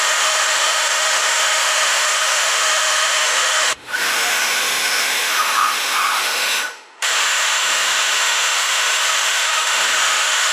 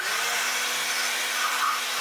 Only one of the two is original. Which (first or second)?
second